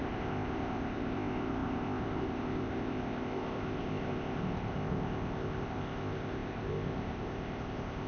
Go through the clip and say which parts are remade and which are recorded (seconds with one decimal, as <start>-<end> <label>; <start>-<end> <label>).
0.0-8.1 remade